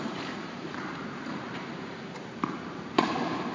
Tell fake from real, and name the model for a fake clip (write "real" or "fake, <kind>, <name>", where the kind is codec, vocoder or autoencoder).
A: fake, vocoder, BigVGAN v2